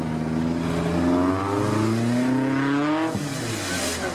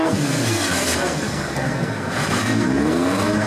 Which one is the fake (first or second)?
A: second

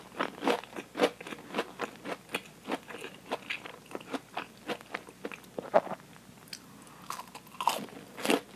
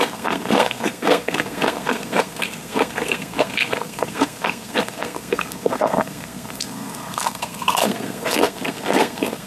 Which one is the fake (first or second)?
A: second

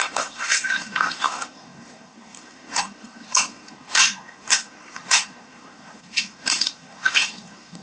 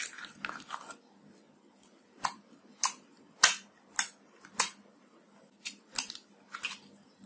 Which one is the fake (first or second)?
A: first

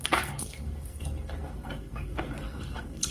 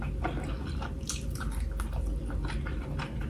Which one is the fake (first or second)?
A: first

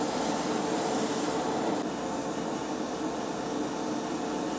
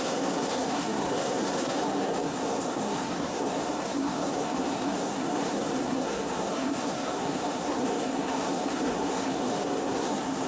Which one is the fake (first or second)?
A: second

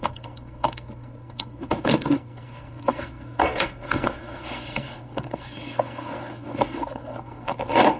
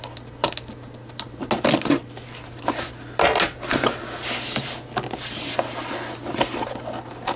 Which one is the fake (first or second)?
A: first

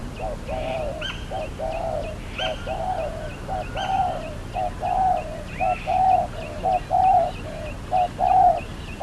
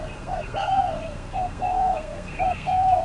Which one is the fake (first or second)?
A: second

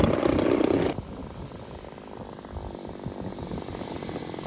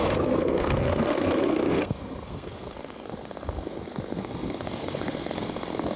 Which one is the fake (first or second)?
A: second